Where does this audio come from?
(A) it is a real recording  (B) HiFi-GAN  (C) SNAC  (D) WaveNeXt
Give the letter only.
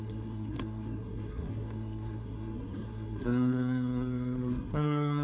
C